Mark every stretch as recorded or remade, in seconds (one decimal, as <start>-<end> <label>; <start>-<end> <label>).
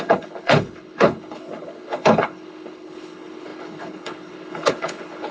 0.0-5.3 remade